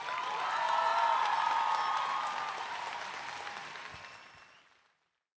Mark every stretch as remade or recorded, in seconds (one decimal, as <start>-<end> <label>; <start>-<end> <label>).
0.0-5.4 recorded

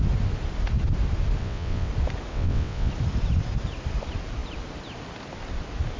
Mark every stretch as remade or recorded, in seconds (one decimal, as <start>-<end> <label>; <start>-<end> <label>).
0.0-1.4 recorded; 1.4-1.9 remade; 1.9-2.3 recorded; 2.3-2.9 remade; 2.9-6.0 recorded

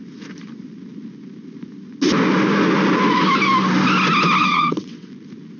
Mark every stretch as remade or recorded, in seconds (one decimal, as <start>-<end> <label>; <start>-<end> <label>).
0.0-4.4 recorded; 4.4-5.1 remade; 5.1-5.6 recorded

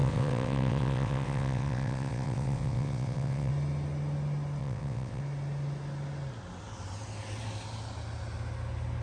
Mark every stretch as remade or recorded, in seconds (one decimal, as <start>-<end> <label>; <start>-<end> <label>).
0.0-3.5 remade; 3.5-4.6 recorded; 4.6-5.2 remade; 5.2-9.0 recorded

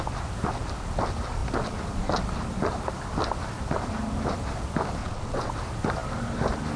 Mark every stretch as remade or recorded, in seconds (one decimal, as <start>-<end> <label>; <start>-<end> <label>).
0.0-5.0 recorded; 5.0-5.5 remade; 5.5-6.8 recorded